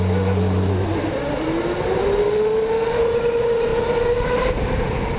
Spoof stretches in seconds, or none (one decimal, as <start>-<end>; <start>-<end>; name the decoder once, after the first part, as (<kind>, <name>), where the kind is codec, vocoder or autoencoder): 2.2-3.0 (autoencoder, DAC-VAE)